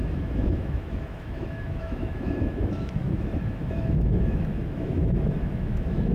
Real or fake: fake